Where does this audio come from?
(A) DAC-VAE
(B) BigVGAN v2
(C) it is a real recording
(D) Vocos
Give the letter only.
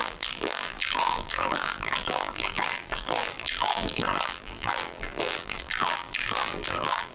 B